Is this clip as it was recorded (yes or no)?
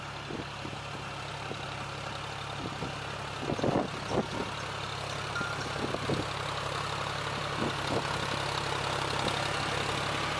yes